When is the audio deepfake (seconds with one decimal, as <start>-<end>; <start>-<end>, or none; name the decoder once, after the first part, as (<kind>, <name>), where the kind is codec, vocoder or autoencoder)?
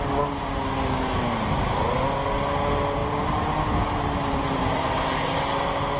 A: none